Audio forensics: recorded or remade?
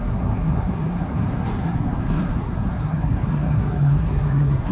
remade